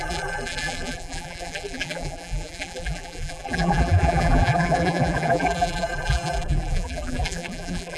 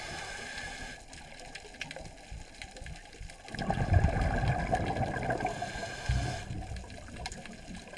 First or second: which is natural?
second